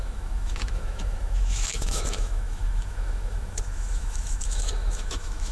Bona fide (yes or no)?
no